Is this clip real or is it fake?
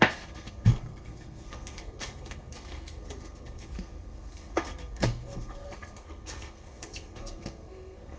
fake